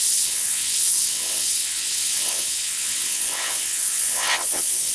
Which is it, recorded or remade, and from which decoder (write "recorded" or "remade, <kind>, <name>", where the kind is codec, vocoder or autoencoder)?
remade, vocoder, WaveNeXt